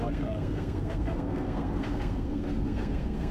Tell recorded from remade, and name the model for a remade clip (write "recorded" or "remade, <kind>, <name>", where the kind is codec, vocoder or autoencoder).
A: remade, codec, SNAC